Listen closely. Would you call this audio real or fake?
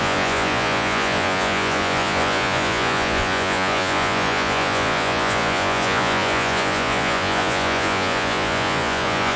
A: fake